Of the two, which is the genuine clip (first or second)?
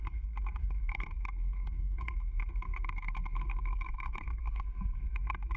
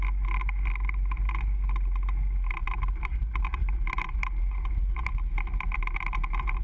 second